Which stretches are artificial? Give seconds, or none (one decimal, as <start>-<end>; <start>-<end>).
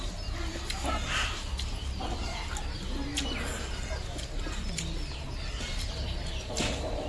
none